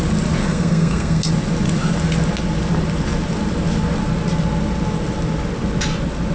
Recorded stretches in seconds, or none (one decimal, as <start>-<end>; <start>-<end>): 0.0-0.4; 1.3-6.3

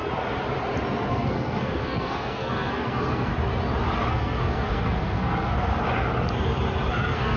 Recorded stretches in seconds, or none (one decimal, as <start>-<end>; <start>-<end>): 0.0-1.1; 3.3-4.1; 5.7-6.9